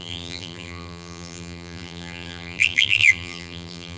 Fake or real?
fake